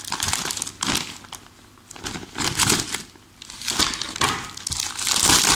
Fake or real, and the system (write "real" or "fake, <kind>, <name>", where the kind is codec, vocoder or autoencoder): real